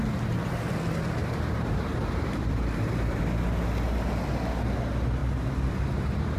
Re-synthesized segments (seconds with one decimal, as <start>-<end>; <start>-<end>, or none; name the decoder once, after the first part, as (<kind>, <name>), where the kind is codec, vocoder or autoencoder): 1.2-3.2 (vocoder, BigVGAN v2); 5.2-6.4

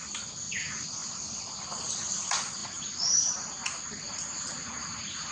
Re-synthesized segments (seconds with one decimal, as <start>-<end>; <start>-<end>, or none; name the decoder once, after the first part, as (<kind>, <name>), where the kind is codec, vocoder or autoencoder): 2.6-3.5 (vocoder, BigVGAN v2)

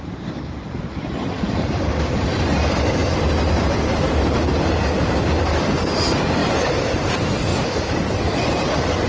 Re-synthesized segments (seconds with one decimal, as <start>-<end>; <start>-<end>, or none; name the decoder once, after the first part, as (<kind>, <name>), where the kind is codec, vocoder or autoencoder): 0.0-3.0 (vocoder, BigVGAN v2); 3.5-7.5; 8.1-9.1